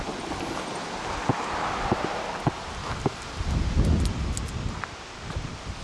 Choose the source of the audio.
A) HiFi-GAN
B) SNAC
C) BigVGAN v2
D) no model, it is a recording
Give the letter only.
D